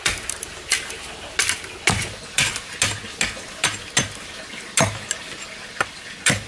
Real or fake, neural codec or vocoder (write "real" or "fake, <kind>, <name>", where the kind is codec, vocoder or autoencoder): real